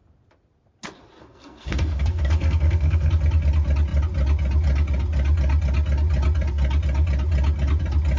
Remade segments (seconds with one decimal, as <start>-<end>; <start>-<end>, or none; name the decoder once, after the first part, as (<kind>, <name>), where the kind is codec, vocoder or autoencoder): 1.2-3.1 (codec, SNAC)